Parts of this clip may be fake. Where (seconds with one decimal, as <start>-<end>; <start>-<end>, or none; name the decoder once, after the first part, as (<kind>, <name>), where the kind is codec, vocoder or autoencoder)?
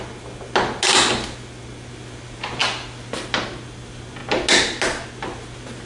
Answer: none